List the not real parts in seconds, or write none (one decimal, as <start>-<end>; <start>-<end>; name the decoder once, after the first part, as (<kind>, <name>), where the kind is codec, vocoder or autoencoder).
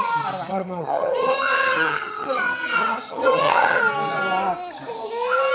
0.5-3.8 (vocoder, HiFi-GAN)